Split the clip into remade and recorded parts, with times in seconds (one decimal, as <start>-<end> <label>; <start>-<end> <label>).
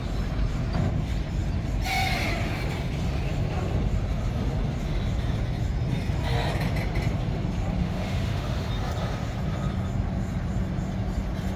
0.0-7.8 recorded; 7.8-8.7 remade; 8.7-11.6 recorded